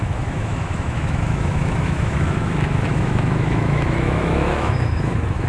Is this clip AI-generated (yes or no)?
yes